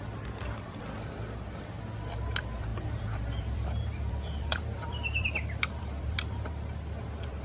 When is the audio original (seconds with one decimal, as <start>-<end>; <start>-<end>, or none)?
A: none